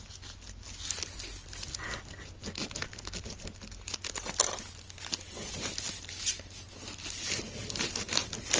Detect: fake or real real